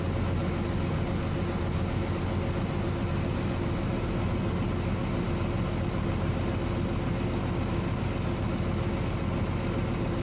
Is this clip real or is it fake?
real